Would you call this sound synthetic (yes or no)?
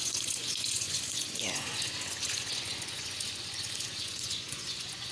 yes